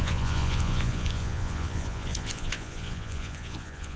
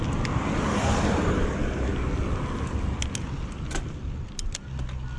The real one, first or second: second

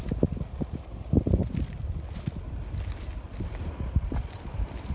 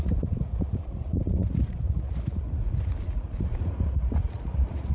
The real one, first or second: first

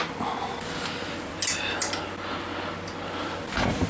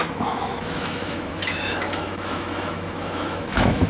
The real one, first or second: first